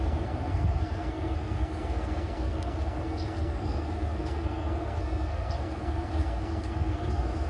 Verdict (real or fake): fake